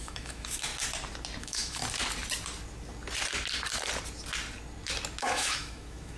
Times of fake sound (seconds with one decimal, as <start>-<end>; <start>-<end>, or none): 0.0-0.7; 1.4-1.8; 5.2-6.2